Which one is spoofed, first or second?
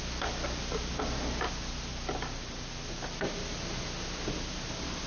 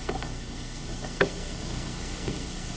second